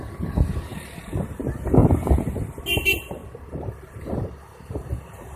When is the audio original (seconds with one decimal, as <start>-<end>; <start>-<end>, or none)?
0.0-1.8; 2.6-3.2; 4.1-5.4